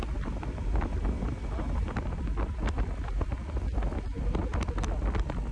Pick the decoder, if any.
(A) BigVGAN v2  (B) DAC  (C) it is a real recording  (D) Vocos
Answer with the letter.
C